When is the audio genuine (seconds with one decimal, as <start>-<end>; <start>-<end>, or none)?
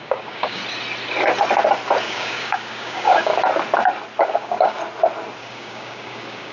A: 0.6-2.0; 3.3-4.2; 4.8-5.4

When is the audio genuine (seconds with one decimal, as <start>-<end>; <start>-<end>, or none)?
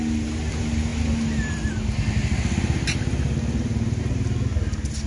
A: 0.0-5.1